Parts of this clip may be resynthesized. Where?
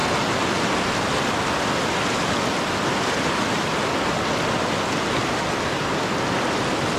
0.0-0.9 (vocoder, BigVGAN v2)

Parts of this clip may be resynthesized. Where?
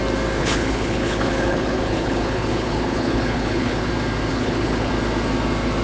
0.4-3.9 (codec, HILCodec); 4.3-4.9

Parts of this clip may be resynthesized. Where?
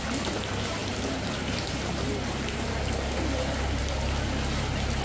none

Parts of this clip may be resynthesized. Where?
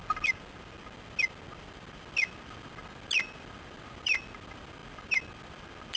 none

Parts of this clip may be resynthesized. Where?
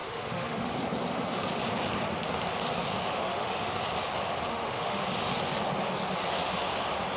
0.0-0.7 (autoencoder, DAC-VAE); 3.1-3.7; 4.5-5.0